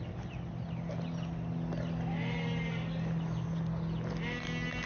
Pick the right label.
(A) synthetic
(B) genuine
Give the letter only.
B